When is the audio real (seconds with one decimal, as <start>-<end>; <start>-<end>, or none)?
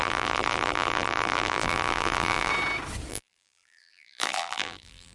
2.5-3.1